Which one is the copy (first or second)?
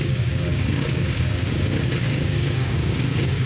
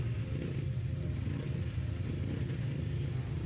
first